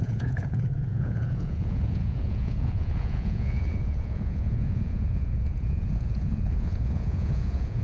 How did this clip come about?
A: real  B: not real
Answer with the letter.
B